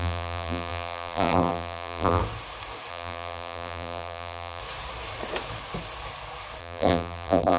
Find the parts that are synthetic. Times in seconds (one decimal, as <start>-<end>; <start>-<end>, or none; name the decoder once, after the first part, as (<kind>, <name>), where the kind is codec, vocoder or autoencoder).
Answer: 0.0-2.2 (vocoder, BigVGAN v2); 2.9-4.6; 6.6-7.6